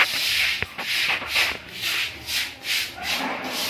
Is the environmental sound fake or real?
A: real